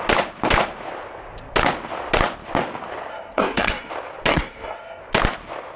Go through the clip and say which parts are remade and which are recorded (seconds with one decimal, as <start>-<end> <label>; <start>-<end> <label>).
0.0-3.1 recorded; 3.1-3.9 remade; 3.9-4.3 recorded; 4.3-5.0 remade; 5.0-5.8 recorded